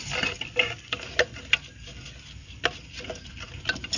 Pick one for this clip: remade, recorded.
recorded